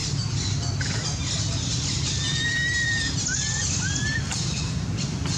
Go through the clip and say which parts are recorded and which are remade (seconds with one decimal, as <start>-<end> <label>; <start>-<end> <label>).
0.0-3.2 remade; 3.2-5.4 recorded